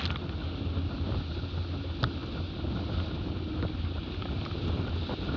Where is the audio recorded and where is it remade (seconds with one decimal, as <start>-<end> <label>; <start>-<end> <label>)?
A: 0.0-5.4 recorded